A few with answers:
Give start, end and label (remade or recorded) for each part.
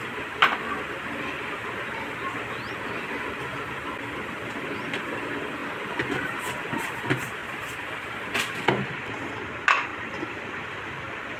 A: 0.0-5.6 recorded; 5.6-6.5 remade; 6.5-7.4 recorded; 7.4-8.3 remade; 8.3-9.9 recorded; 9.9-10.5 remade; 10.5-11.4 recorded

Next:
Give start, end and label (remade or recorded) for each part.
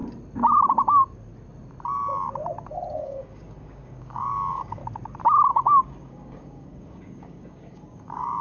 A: 0.0-2.9 recorded; 2.9-4.8 remade; 4.8-5.5 recorded; 5.5-8.4 remade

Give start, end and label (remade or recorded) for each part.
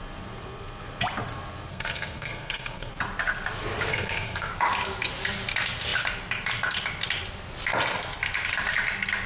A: 0.0-1.7 recorded; 1.7-2.9 remade; 2.9-3.9 recorded; 3.9-4.5 remade; 4.5-9.3 recorded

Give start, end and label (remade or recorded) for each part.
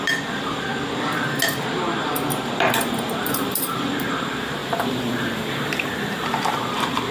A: 0.0-0.7 remade; 0.7-2.5 recorded; 2.5-7.1 remade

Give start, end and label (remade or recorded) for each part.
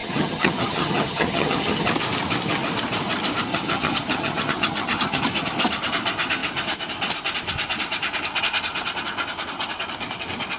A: 0.0-1.9 remade; 1.9-3.5 recorded; 3.5-5.2 remade; 5.2-10.6 recorded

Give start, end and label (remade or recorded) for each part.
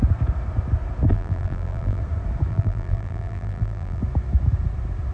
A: 0.0-1.1 recorded; 1.1-2.0 remade; 2.0-2.5 recorded; 2.5-4.0 remade; 4.0-5.1 recorded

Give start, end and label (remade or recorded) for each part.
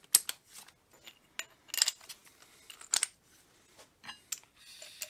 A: 0.0-5.1 recorded